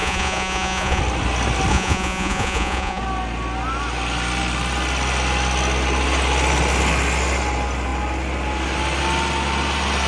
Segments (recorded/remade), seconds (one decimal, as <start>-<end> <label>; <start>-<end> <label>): 0.0-1.0 remade; 1.0-1.7 recorded; 1.7-3.0 remade; 3.0-10.1 recorded